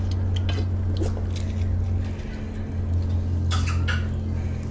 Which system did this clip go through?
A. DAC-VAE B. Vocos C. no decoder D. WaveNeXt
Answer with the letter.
C